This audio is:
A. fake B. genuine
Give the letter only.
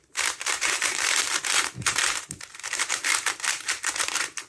A